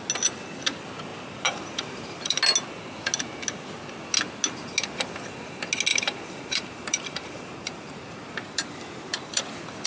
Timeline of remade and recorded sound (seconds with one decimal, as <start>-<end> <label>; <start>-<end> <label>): 0.0-1.1 recorded; 1.1-2.4 remade; 2.4-5.9 recorded; 5.9-9.4 remade; 9.4-9.9 recorded